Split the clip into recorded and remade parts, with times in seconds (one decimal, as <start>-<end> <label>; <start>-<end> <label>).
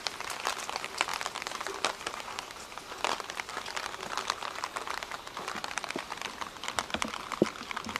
0.0-8.0 recorded